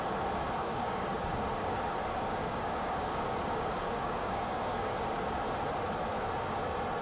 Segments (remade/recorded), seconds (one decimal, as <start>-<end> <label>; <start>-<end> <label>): 0.0-0.6 recorded; 0.6-1.8 remade; 1.8-2.4 recorded; 2.4-4.9 remade; 4.9-7.0 recorded